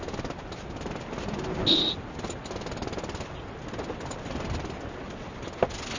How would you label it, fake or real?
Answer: real